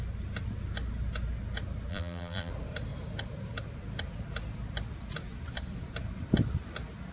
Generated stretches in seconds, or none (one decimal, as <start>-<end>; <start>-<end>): 1.9-2.5